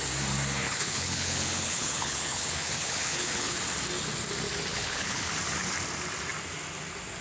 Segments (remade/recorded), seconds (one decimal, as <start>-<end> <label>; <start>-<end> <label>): 0.0-0.6 recorded; 0.6-3.6 remade; 3.6-4.7 recorded; 4.7-5.3 remade; 5.3-7.2 recorded